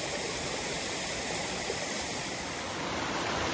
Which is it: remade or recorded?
remade